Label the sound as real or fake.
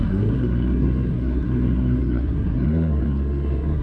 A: fake